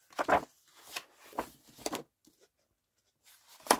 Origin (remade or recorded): recorded